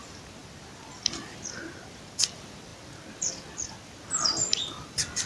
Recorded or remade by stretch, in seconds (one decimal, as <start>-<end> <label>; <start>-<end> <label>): 0.0-5.3 recorded